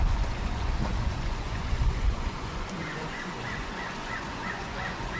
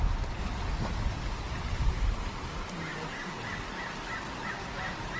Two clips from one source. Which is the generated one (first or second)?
first